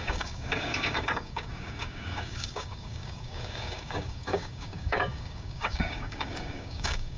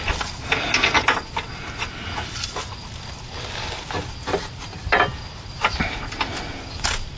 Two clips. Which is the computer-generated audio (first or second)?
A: first